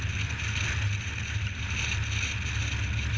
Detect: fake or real real